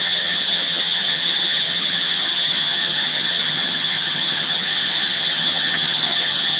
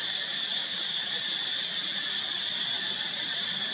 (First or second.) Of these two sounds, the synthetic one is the first